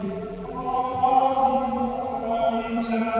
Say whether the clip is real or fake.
fake